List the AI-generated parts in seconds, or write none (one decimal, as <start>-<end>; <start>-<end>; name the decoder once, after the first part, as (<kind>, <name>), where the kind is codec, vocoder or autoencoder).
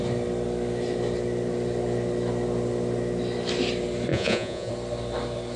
4.1-4.7 (vocoder, Vocos)